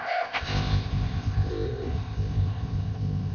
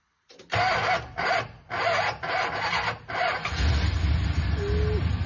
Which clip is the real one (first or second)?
second